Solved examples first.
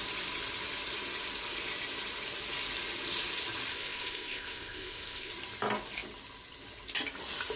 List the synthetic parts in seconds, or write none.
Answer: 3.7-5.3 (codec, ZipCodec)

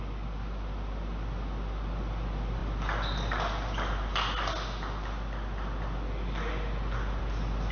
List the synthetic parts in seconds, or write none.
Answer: none

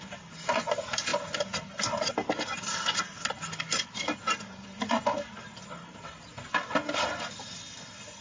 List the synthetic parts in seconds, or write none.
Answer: none